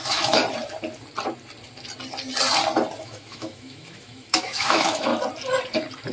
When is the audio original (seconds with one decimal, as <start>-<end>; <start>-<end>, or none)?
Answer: 0.4-3.0; 5.1-6.1